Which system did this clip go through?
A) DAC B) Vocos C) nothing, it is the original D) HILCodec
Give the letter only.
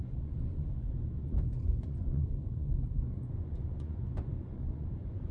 B